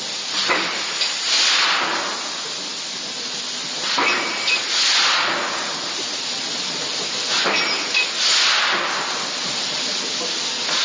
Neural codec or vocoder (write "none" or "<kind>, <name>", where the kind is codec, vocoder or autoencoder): none